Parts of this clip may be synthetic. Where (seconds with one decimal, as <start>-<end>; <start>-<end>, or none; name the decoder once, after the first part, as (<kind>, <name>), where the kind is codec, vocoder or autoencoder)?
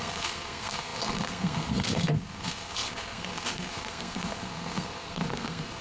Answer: 0.0-5.8 (codec, SNAC)